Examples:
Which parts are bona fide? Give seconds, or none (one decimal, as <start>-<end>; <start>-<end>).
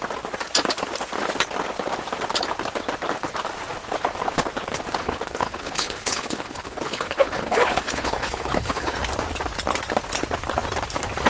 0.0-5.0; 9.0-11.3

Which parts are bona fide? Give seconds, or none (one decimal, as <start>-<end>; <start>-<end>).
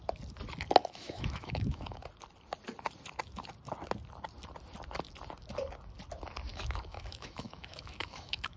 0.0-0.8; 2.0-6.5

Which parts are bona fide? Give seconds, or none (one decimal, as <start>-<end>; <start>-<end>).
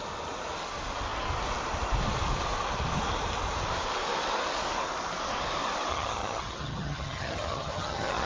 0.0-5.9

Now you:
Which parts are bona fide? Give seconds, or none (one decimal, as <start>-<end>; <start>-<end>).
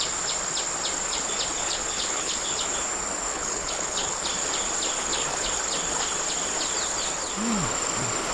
0.0-1.6; 2.7-3.3; 4.2-5.0; 5.6-8.3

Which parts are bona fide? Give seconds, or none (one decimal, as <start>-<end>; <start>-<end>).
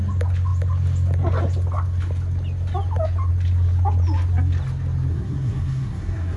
0.0-5.1